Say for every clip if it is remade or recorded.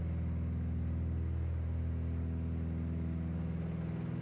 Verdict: recorded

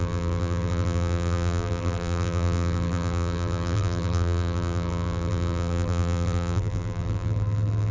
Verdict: remade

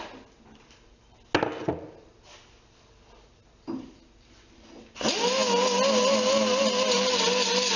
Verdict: recorded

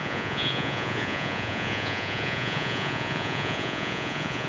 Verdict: remade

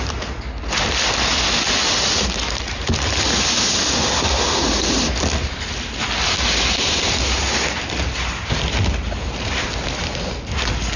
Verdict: recorded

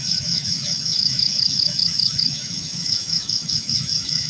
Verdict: remade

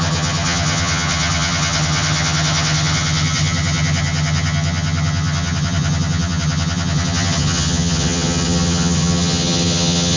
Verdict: remade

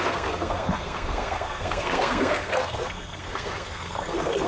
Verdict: remade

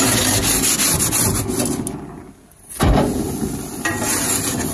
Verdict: recorded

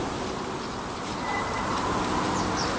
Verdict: recorded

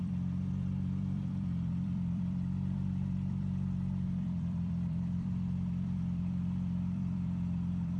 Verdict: remade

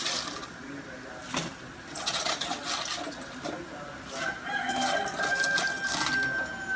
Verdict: recorded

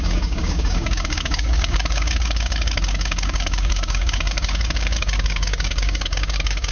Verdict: remade